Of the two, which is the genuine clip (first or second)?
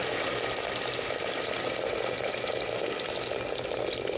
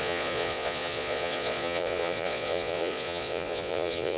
first